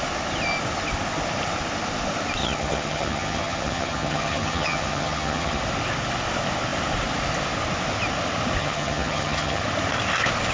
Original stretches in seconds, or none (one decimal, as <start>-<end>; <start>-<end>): 0.0-2.4; 5.6-8.6; 9.6-10.5